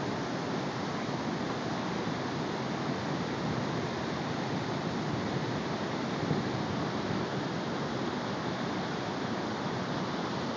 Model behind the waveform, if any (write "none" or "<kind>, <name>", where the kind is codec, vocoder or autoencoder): none